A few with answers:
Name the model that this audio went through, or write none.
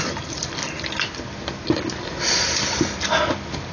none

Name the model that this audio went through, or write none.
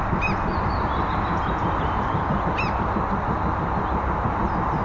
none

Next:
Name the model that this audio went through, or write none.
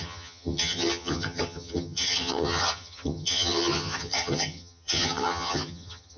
vocoder, HiFi-GAN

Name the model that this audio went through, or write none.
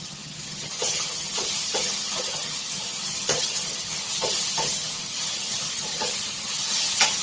vocoder, HiFi-GAN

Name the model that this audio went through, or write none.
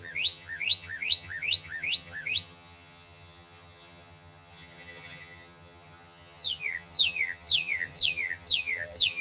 vocoder, HiFi-GAN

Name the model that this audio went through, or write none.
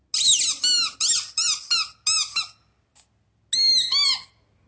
none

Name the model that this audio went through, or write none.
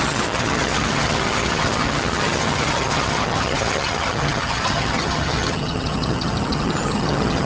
vocoder, HiFi-GAN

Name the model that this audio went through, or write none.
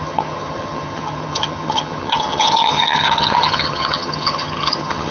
vocoder, HiFi-GAN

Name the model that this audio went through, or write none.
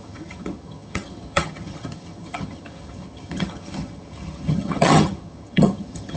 vocoder, HiFi-GAN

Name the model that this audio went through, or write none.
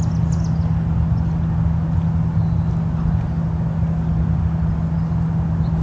none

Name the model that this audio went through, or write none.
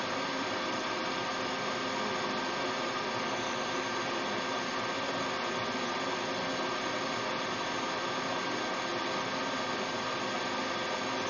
none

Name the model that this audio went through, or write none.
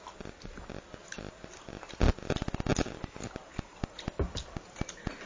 none